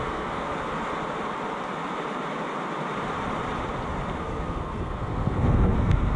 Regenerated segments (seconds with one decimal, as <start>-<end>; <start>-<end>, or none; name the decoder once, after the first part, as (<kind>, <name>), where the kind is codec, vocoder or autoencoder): 0.0-0.5 (codec, SNAC); 4.2-6.2